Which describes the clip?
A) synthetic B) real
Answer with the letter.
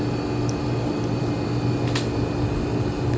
B